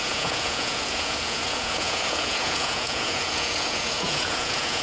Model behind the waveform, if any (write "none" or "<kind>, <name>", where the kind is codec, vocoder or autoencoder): vocoder, Vocos